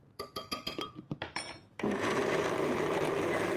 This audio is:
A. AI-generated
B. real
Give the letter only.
A